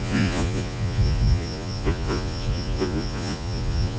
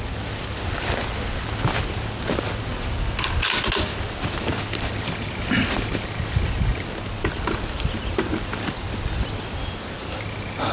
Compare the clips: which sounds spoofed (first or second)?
first